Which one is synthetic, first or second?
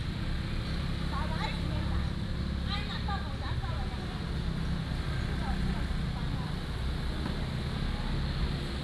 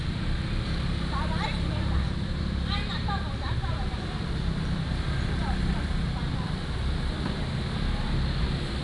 second